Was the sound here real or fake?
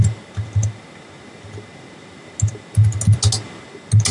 real